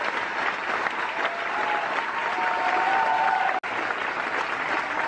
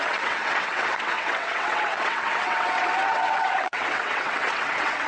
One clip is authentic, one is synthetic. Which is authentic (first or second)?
first